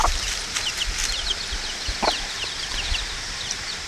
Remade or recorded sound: remade